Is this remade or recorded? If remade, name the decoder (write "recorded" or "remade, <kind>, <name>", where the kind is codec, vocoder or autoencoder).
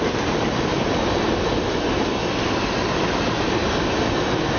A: recorded